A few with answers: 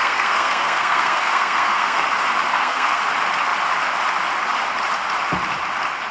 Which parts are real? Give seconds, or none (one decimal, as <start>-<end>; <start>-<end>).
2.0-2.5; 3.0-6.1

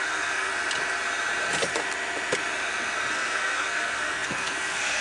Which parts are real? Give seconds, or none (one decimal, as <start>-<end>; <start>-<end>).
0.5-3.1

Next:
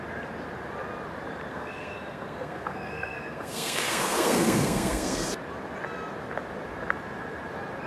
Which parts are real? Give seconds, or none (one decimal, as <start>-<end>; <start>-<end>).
0.0-1.5; 5.3-7.9

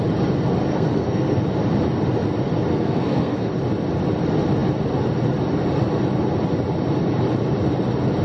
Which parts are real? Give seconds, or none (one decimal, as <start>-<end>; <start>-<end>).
0.0-0.7; 1.4-2.7; 3.5-8.2

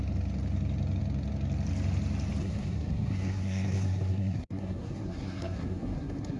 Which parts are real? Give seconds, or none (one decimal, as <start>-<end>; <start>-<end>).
0.0-2.4